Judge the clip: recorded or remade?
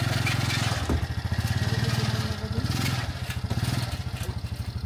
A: recorded